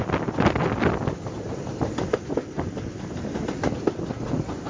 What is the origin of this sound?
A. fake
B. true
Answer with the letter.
B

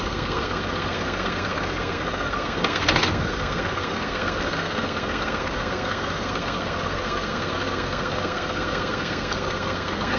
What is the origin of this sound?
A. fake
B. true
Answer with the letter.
A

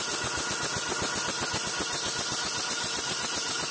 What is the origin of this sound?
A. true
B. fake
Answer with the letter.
A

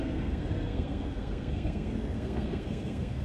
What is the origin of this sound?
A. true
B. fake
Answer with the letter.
B